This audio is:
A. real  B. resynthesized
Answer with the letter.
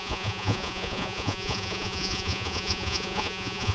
B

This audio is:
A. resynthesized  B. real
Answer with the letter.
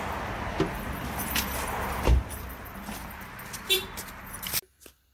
B